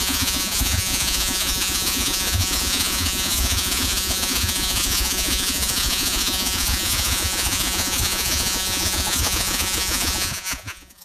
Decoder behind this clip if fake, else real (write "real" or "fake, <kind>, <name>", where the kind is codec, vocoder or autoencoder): fake, vocoder, Vocos